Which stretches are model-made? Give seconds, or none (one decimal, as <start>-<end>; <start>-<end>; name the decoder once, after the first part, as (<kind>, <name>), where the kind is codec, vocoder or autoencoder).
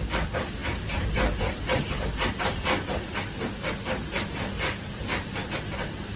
none